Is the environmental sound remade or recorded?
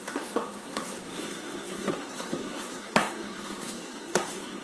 remade